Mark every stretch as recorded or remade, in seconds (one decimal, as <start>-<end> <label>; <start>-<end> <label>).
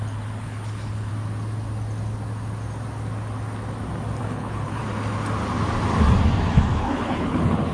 0.0-1.1 remade; 1.1-4.2 recorded; 4.2-4.8 remade; 4.8-6.8 recorded; 6.8-7.7 remade